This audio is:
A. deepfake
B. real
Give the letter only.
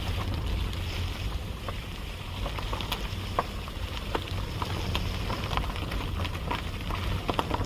B